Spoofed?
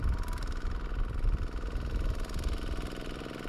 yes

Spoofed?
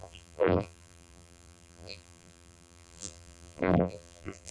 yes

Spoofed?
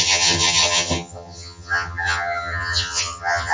yes